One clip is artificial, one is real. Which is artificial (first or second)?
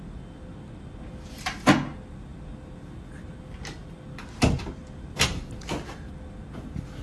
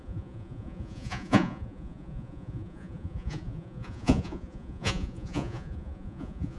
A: second